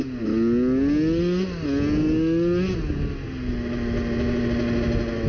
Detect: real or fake real